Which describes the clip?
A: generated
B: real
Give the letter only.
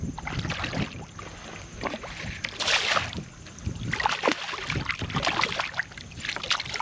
B